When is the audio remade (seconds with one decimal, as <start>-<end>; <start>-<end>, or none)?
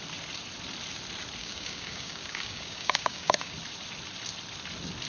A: 1.4-3.5